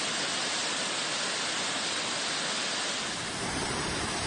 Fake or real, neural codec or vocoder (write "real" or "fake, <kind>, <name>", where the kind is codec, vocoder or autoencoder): real